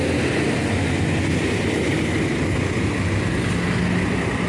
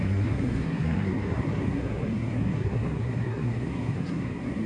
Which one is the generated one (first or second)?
second